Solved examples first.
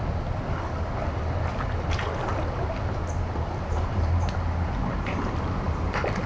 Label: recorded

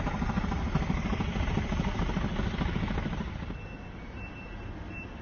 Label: recorded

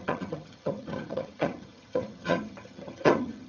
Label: remade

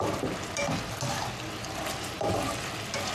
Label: recorded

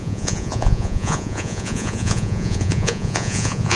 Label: remade